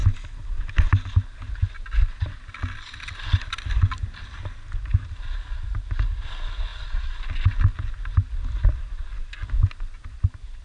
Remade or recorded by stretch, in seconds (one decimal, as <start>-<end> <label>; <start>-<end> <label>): 0.0-10.6 recorded

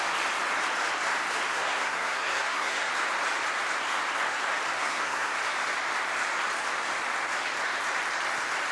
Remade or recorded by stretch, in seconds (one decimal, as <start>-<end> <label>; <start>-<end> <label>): 0.0-1.5 recorded; 1.5-2.9 remade; 2.9-4.8 recorded; 4.8-5.4 remade; 5.4-8.7 recorded

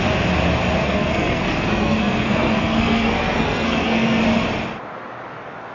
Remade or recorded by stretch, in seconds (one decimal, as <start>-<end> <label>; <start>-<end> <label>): 0.0-0.8 recorded; 0.8-4.2 remade; 4.2-5.7 recorded

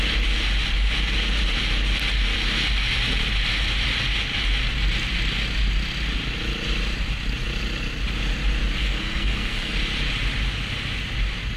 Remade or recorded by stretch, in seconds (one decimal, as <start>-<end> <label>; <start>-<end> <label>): 0.0-8.8 recorded; 8.8-9.7 remade; 9.7-11.6 recorded

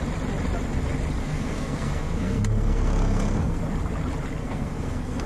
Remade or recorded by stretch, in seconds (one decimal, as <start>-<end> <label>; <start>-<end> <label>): 0.0-1.2 recorded; 1.2-3.6 remade; 3.6-4.4 recorded; 4.4-5.3 remade

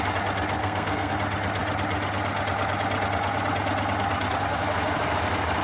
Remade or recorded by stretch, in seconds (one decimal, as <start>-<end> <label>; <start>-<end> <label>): 0.0-0.6 recorded; 0.6-1.1 remade; 1.1-5.6 recorded

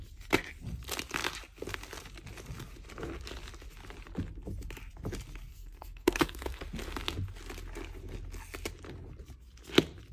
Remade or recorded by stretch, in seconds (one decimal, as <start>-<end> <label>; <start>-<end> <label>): 0.0-5.5 recorded; 5.5-6.6 remade; 6.6-10.1 recorded